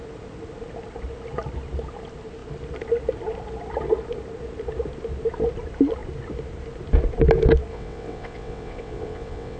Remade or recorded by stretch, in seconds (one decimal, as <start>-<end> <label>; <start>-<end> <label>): 0.0-7.7 recorded; 7.7-9.6 remade

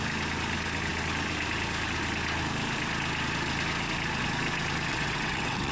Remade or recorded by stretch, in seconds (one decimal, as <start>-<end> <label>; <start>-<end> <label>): 0.0-4.9 recorded; 4.9-5.7 remade

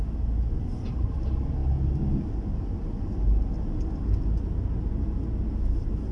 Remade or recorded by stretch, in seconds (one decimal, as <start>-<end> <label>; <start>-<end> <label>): 0.0-6.1 recorded

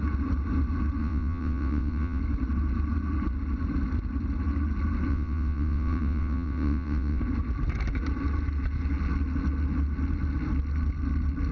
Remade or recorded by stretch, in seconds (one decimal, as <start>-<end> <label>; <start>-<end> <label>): 0.0-1.0 recorded; 1.0-2.2 remade; 2.2-5.1 recorded; 5.1-7.2 remade; 7.2-11.5 recorded

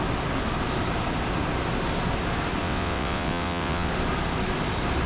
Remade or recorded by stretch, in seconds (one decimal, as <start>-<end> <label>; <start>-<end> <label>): 0.0-2.6 recorded; 2.6-3.9 remade; 3.9-5.1 recorded

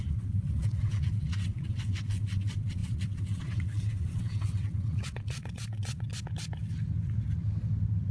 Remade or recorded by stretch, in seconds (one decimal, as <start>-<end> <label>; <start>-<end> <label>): 0.0-6.1 remade; 6.1-8.1 recorded

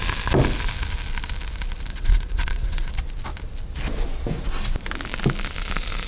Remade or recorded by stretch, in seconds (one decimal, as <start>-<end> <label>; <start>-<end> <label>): 0.0-1.9 recorded; 1.9-2.9 remade; 2.9-6.1 recorded

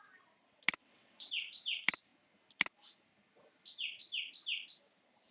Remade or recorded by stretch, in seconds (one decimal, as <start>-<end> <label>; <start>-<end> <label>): 0.0-0.8 recorded; 0.8-1.3 remade; 1.3-5.3 recorded